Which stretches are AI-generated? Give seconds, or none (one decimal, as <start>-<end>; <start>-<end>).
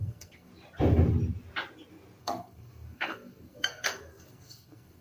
0.0-0.5; 2.2-5.0